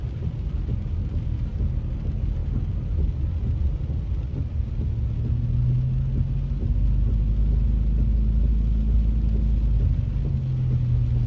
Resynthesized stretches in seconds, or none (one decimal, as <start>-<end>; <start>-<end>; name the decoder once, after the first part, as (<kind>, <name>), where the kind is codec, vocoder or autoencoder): none